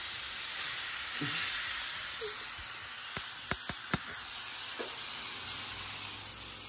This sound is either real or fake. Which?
real